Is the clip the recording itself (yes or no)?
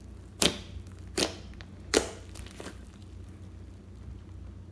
yes